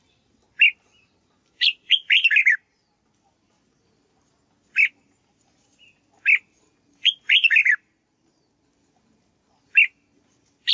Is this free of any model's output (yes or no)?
yes